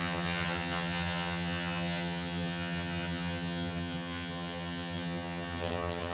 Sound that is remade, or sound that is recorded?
remade